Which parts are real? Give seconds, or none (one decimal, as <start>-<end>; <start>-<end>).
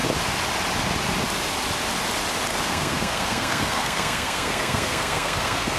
0.0-2.5